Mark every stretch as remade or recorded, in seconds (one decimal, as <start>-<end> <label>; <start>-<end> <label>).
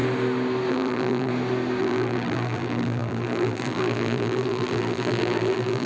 0.0-0.7 recorded; 0.7-1.3 remade; 1.3-1.8 recorded; 1.8-5.9 remade